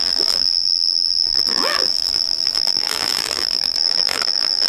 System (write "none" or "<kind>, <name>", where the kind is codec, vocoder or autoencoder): vocoder, BigVGAN v2